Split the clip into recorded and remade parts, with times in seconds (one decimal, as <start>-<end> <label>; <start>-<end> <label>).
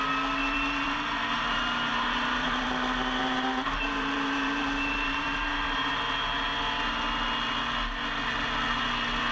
0.0-0.4 recorded; 0.4-2.7 remade; 2.7-3.2 recorded; 3.2-5.9 remade; 5.9-9.3 recorded